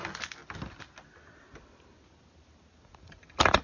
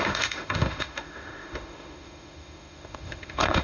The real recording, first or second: first